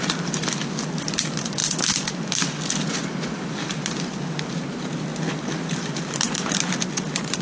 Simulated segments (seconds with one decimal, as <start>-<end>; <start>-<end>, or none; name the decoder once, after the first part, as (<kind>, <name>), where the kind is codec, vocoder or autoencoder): none